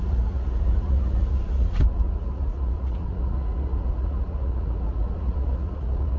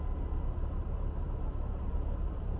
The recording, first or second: second